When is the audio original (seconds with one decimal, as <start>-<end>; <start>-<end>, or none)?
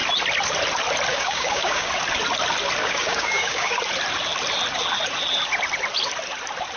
0.0-1.1; 1.9-2.8; 3.8-6.8